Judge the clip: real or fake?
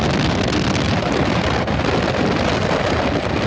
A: real